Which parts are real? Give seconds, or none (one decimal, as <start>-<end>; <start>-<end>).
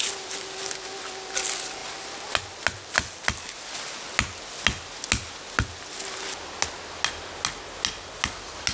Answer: 0.0-8.7